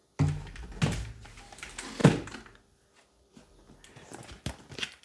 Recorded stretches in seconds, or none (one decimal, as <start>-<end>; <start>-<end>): 0.0-5.0